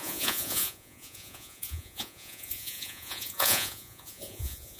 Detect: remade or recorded remade